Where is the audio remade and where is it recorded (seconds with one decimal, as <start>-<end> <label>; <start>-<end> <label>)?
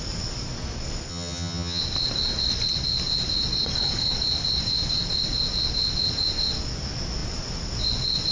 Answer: 0.0-1.1 recorded; 1.1-1.8 remade; 1.8-8.3 recorded